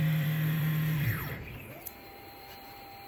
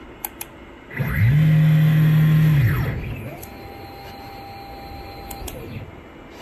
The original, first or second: second